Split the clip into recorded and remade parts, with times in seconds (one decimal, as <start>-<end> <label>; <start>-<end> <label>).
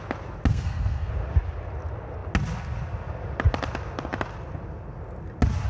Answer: 0.0-0.5 recorded; 0.5-1.1 remade; 1.1-5.7 recorded